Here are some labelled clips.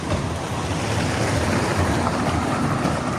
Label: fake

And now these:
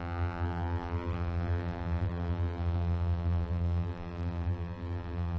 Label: fake